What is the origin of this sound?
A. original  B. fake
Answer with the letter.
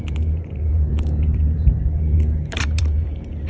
B